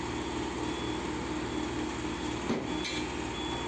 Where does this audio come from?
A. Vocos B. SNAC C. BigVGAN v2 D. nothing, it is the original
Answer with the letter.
D